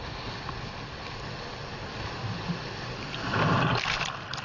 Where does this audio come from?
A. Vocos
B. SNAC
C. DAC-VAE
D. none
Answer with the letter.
D